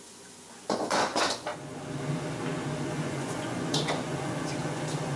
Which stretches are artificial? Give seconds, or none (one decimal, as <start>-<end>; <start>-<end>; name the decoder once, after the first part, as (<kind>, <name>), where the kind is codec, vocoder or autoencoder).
0.0-1.5 (vocoder, Vocos); 2.9-5.2